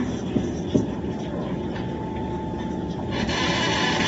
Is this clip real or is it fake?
real